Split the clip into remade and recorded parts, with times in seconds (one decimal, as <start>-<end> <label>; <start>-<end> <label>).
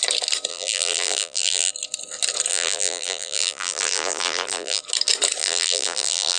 0.0-0.5 recorded; 0.5-1.7 remade; 1.7-2.5 recorded; 2.5-4.8 remade; 4.8-5.4 recorded; 5.4-6.4 remade